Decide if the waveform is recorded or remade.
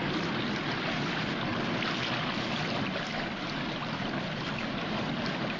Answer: recorded